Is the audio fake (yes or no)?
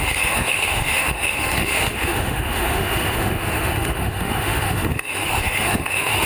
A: yes